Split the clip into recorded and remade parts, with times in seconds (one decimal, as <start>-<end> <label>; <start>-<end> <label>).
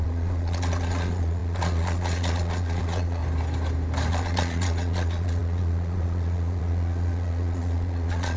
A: 0.0-3.2 remade; 3.2-4.1 recorded; 4.1-8.4 remade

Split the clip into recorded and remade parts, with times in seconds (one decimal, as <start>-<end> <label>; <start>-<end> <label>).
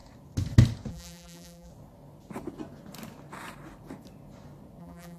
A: 0.0-0.9 recorded; 0.9-1.7 remade; 1.7-4.8 recorded; 4.8-5.2 remade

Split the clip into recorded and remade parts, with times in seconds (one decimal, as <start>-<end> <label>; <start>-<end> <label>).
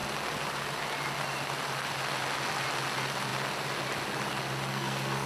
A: 0.0-4.7 recorded; 4.7-5.3 remade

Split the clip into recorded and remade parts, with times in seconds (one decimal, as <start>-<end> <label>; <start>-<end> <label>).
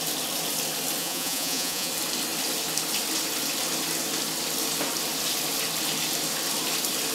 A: 0.0-1.0 recorded; 1.0-1.9 remade; 1.9-7.1 recorded